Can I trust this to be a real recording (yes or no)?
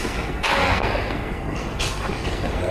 no